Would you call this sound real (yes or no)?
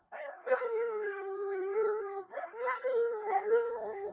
no